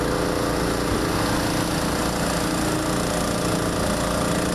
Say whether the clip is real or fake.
real